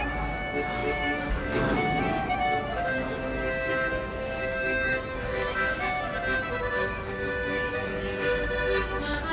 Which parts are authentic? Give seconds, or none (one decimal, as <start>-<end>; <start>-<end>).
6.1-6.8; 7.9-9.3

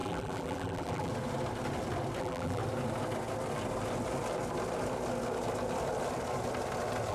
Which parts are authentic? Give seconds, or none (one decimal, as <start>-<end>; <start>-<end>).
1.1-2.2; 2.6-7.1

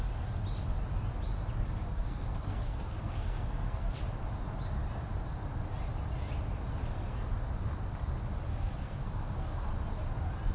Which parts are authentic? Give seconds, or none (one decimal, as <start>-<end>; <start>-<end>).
0.0-1.9; 4.0-6.8; 7.3-8.5; 9.7-10.5